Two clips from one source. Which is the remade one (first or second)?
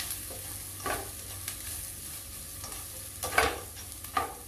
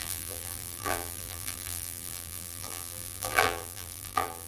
second